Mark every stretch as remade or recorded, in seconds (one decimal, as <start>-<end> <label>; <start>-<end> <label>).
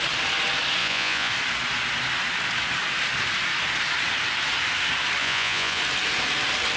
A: 0.0-0.8 recorded; 0.8-1.3 remade; 1.3-5.2 recorded; 5.2-5.8 remade; 5.8-6.8 recorded